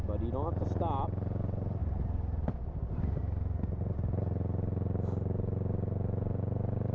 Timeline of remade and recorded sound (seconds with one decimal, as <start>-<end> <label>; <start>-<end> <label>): 0.0-6.9 recorded